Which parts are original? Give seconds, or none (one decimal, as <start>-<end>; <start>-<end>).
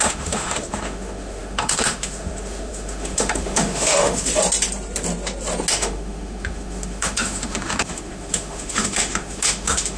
4.3-5.7